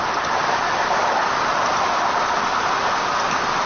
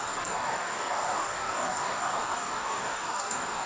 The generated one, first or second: second